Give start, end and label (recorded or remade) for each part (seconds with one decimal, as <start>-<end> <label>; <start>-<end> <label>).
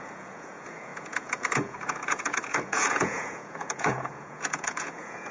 0.0-5.3 remade